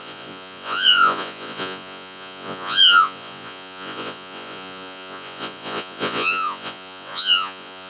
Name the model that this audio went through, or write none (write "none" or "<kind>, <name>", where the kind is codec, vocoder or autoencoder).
vocoder, Vocos